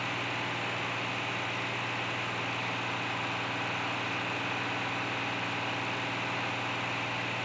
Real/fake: real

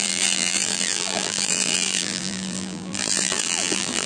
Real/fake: fake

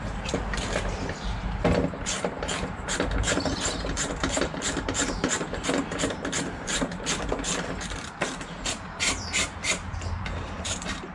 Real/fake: fake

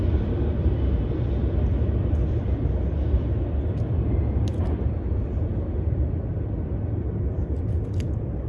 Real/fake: real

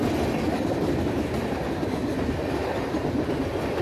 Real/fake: real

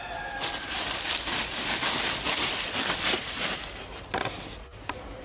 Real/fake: fake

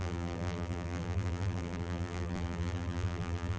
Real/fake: fake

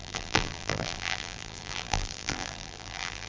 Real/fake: fake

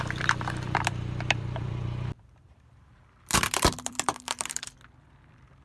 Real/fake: fake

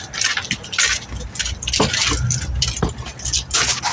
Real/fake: real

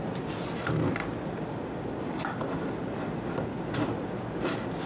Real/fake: fake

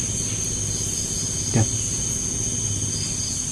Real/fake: real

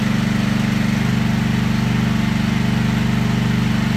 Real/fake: real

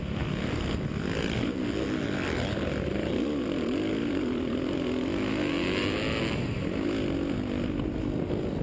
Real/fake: real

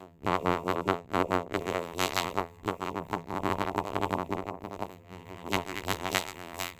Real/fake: fake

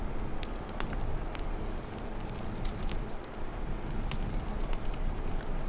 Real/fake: real